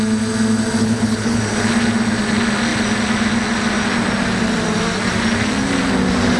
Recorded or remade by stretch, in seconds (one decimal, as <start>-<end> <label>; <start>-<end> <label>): 0.0-0.8 recorded; 0.8-1.4 remade; 1.4-6.4 recorded